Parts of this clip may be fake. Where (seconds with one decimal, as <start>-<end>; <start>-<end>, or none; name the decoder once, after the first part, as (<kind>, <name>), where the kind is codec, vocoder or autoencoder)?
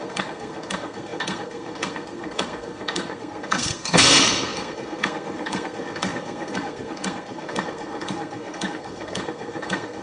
0.0-10.0 (codec, SNAC)